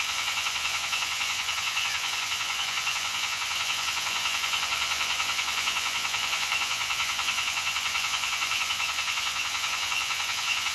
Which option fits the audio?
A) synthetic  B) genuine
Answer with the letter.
A